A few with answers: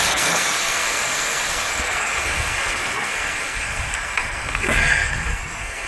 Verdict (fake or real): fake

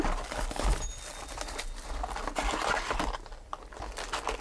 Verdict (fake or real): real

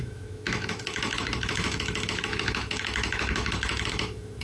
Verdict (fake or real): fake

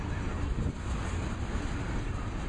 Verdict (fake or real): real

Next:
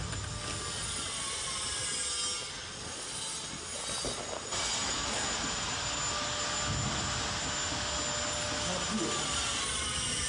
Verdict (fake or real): real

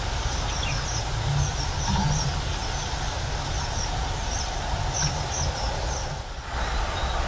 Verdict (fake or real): real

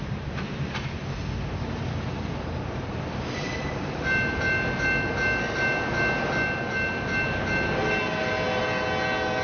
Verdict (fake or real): real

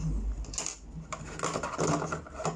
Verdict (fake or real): real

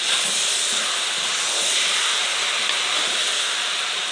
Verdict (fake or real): real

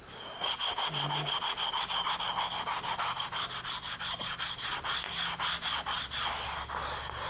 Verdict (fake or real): real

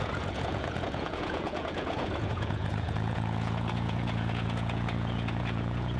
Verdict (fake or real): fake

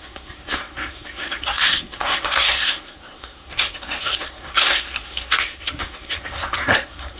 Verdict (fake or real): fake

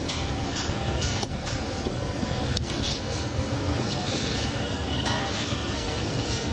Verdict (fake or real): fake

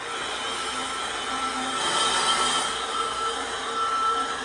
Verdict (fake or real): real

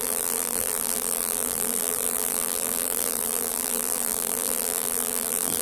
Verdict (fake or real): fake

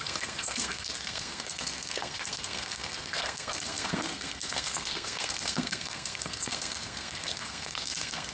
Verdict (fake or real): fake